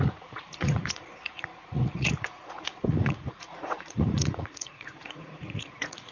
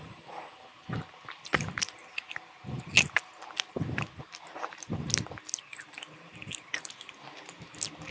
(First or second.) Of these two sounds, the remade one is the first